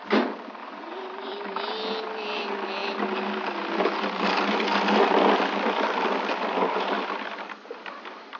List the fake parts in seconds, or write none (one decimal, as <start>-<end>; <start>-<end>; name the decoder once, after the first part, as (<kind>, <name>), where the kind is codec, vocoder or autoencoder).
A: 0.6-1.3 (vocoder, Vocos)